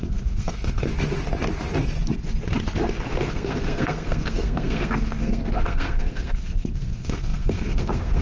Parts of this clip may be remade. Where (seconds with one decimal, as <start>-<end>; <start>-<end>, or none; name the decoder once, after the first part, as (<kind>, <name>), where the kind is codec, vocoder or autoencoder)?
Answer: 0.0-0.9 (codec, SNAC); 3.3-8.2